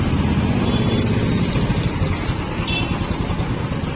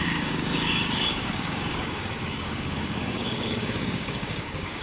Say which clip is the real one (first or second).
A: first